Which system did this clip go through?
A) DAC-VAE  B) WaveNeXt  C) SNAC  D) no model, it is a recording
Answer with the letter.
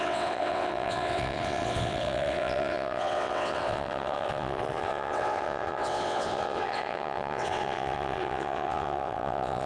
B